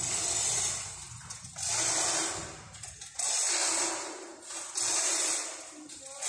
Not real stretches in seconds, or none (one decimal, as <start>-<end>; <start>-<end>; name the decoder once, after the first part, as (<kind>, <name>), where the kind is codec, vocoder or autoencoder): none